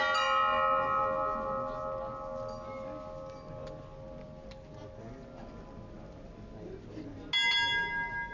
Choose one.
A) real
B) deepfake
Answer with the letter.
A